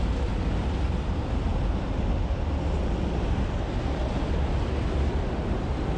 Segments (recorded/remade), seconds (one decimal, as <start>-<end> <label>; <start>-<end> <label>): 0.0-6.0 recorded